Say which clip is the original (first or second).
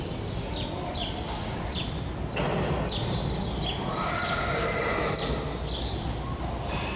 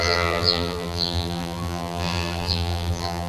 first